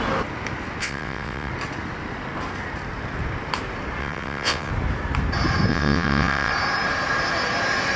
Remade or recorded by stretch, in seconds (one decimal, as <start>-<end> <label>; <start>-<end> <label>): 0.0-0.8 recorded; 0.8-1.5 remade; 1.5-4.0 recorded; 4.0-4.7 remade; 4.7-5.7 recorded; 5.7-6.5 remade; 6.5-8.0 recorded